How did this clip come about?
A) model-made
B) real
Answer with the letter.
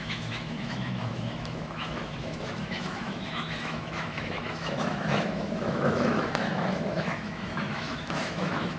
A